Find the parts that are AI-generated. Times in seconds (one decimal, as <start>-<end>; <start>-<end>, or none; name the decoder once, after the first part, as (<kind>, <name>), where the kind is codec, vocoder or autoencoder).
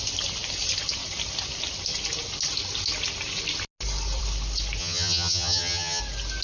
4.8-6.0 (vocoder, HiFi-GAN)